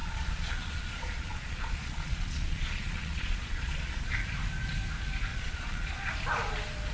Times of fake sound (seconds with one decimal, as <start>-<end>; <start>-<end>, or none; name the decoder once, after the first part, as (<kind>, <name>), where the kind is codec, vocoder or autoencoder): 0.0-4.1 (vocoder, Vocos); 5.3-6.1